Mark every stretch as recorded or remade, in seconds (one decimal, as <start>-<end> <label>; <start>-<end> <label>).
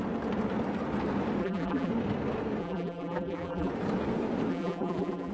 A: 0.0-1.4 recorded; 1.4-1.9 remade; 1.9-2.6 recorded; 2.6-3.7 remade; 3.7-4.5 recorded; 4.5-5.3 remade